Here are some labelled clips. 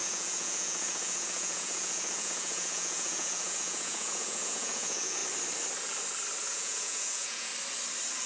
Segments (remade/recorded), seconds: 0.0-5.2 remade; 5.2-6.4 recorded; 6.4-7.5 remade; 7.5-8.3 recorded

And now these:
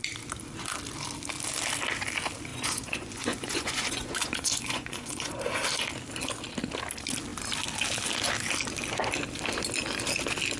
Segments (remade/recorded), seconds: 0.0-2.5 recorded; 2.5-5.3 remade; 5.3-10.6 recorded